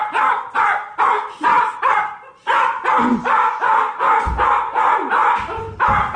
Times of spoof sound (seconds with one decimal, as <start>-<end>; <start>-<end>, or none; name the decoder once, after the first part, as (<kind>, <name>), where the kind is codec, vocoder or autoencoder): none

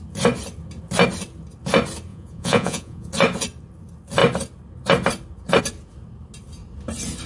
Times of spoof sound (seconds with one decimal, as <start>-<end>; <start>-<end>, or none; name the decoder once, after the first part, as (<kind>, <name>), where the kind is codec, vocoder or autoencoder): 2.1-3.1 (vocoder, Vocos)

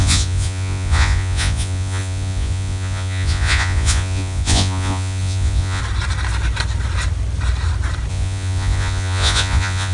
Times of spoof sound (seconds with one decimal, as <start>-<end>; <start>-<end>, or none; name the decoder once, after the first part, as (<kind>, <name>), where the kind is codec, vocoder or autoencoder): 0.0-5.8 (vocoder, Vocos); 8.1-9.9

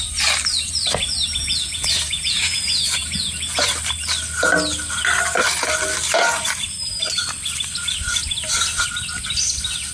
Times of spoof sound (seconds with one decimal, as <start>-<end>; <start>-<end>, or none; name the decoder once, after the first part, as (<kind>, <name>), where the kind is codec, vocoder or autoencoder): 1.4-3.7 (vocoder, Vocos)